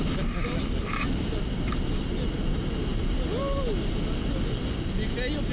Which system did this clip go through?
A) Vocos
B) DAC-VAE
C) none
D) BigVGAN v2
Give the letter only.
C